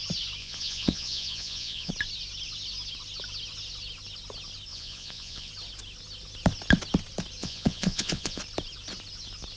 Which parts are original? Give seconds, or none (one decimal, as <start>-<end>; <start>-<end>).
0.0-0.4; 1.9-4.7; 5.5-7.4; 8.4-9.6